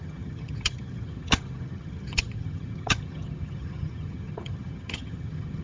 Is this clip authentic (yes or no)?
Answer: no